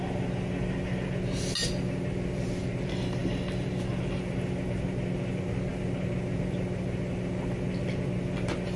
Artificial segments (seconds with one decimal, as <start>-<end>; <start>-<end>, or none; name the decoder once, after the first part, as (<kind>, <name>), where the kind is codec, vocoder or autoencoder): none

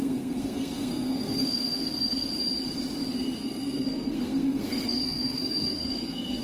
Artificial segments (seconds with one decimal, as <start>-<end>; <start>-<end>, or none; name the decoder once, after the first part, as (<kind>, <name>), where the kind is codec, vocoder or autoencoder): 0.0-2.4 (codec, SNAC); 3.4-6.4

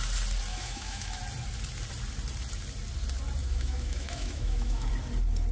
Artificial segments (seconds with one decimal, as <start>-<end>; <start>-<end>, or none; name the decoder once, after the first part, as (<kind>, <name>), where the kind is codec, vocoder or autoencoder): 0.5-1.2 (autoencoder, DAC-VAE); 3.4-4.9

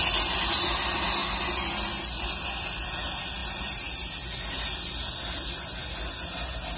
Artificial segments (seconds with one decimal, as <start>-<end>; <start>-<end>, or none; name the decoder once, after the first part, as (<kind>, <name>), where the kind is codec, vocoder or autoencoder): none

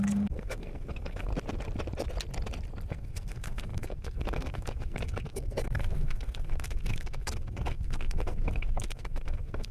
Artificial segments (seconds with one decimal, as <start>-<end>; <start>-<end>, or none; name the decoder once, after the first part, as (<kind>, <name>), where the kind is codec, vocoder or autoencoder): 0.0-1.3 (codec, SNAC); 2.9-9.7